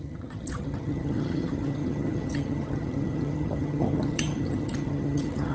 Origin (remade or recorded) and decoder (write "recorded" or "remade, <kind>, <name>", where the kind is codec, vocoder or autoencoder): remade, vocoder, HiFi-GAN